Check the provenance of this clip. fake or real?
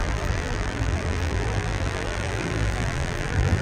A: fake